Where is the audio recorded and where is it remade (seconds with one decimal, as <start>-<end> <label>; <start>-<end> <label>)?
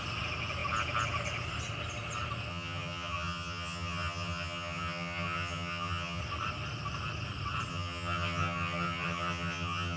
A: 0.0-2.5 recorded; 2.5-6.2 remade; 6.2-7.7 recorded; 7.7-10.0 remade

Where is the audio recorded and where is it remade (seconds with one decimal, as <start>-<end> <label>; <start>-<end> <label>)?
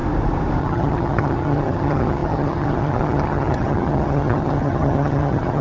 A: 0.0-0.6 recorded; 0.6-5.6 remade